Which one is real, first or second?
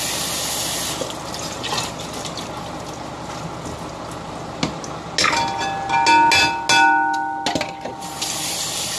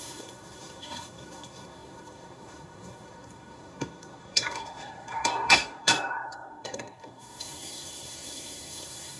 first